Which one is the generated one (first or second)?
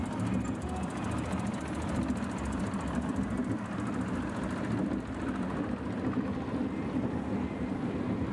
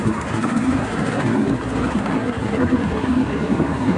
second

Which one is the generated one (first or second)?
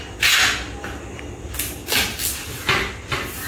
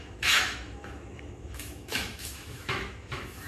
second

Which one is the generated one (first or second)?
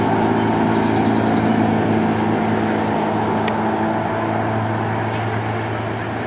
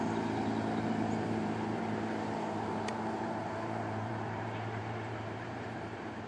second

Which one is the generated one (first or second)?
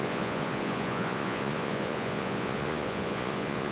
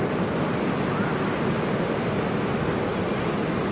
first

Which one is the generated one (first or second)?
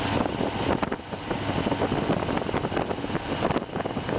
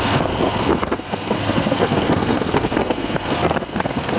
second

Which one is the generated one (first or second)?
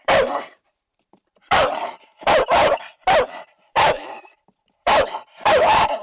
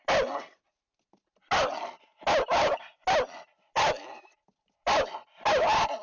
first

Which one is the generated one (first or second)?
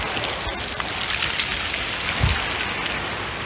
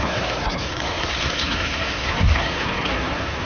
second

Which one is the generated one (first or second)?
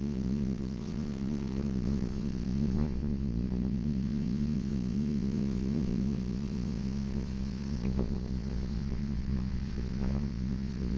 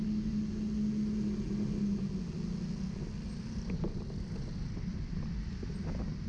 first